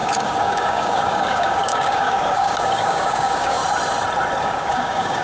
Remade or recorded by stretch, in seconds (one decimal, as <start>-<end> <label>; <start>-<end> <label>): 0.0-3.6 remade; 3.6-4.4 recorded; 4.4-5.2 remade